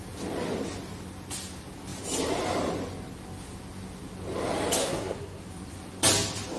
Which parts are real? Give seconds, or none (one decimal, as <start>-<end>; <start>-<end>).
0.0-4.8; 5.4-6.6